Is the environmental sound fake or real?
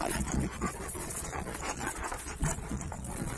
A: fake